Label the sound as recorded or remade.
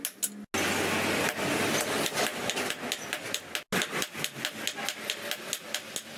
recorded